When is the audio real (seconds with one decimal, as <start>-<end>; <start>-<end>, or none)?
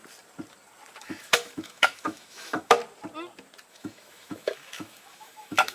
0.0-1.0; 2.8-3.7